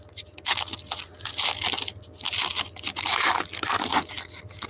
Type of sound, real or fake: real